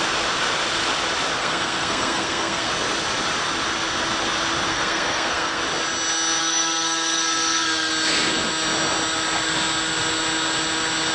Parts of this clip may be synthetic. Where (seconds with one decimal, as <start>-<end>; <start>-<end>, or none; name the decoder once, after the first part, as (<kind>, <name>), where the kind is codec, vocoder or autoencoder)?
1.4-2.7 (codec, SNAC); 4.7-5.6; 6.4-7.9